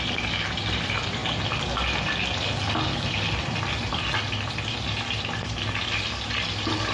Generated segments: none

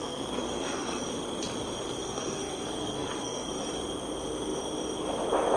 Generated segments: 0.0-1.0 (codec, SNAC); 2.0-3.5

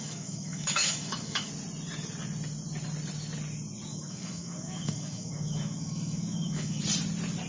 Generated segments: 0.0-1.5 (autoencoder, DAC-VAE); 3.9-6.8

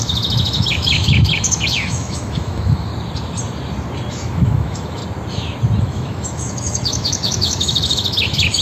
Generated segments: 0.0-2.9 (autoencoder, DAC-VAE); 4.1-5.0; 5.8-8.6

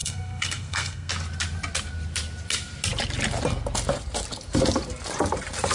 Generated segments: 0.0-1.1 (codec, SNAC)

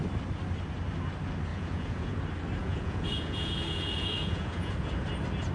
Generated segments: 1.5-2.2 (vocoder, Vocos); 2.6-4.9

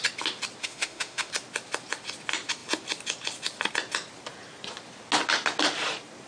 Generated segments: 0.6-1.3 (autoencoder, DAC-VAE)

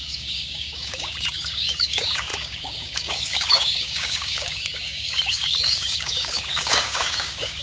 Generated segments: 0.0-7.6 (codec, DAC)